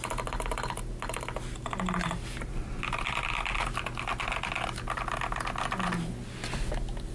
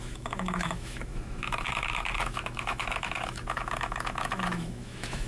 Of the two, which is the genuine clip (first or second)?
first